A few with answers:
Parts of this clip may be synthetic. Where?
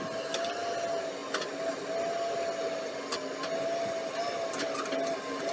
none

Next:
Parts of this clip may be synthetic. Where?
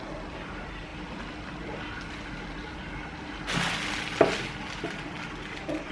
none